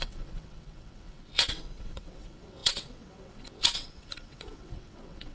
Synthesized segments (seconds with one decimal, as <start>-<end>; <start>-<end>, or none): 0.0-5.3